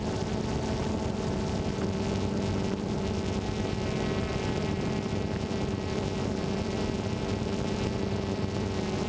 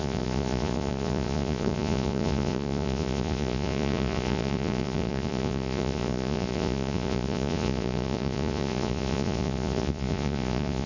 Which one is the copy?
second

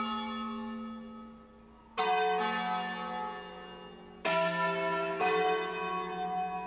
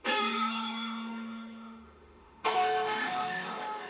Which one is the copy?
second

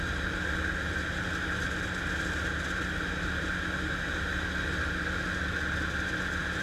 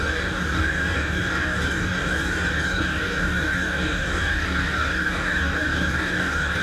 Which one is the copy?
second